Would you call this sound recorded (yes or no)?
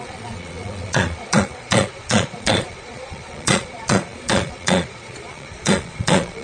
no